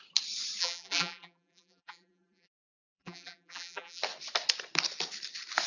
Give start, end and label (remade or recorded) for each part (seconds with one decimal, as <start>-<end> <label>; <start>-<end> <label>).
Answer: 0.0-0.6 recorded; 0.6-4.0 remade; 4.0-5.7 recorded